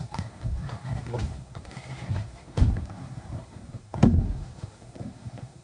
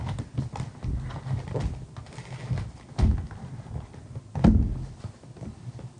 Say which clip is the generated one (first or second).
first